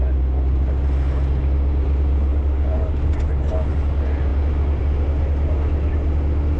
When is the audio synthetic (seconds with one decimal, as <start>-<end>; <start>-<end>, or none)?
2.3-3.1